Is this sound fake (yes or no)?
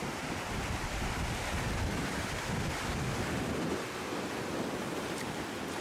no